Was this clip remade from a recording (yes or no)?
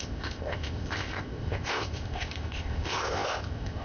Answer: yes